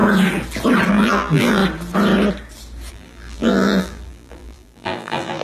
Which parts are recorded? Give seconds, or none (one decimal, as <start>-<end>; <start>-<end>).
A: 0.0-0.9; 1.6-2.9